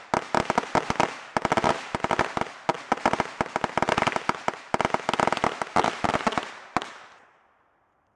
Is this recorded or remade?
recorded